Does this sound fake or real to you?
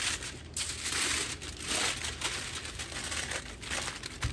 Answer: real